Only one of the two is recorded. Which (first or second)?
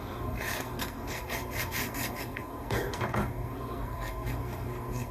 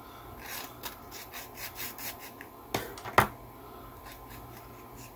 second